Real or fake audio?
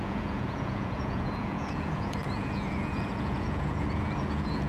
fake